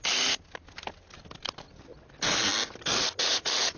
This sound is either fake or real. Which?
real